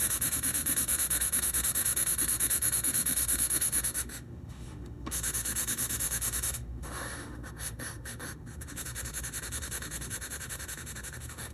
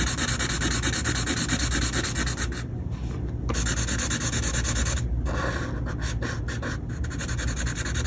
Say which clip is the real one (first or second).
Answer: second